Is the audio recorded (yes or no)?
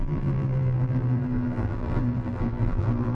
no